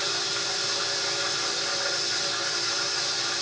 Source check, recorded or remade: recorded